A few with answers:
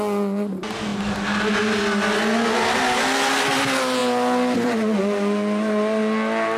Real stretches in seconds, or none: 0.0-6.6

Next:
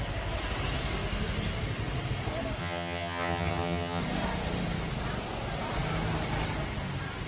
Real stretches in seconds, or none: 0.0-2.6; 4.0-7.3

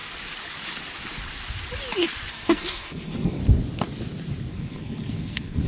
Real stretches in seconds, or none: 0.0-2.3; 3.4-4.5

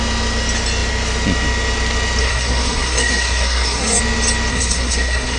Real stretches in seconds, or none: 0.0-2.2; 4.0-4.5

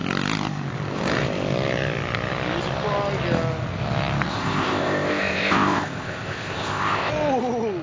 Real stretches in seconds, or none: 0.0-4.3; 7.1-7.8

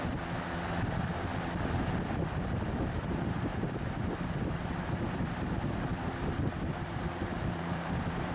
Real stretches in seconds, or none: 1.3-1.8

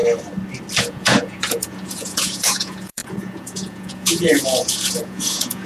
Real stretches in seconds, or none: 0.0-0.8